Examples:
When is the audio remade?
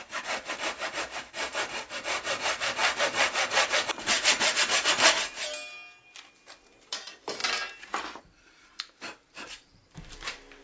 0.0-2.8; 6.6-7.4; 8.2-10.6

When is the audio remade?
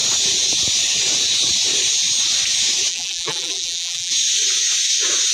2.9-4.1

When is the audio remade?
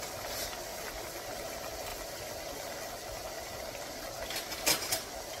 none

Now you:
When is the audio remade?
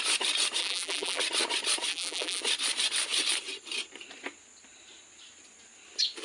0.6-1.2; 1.9-2.4